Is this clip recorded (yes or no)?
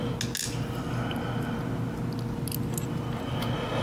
yes